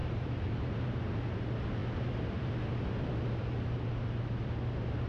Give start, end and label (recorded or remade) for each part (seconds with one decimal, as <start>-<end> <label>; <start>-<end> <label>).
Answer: 0.0-1.0 remade; 1.0-5.1 recorded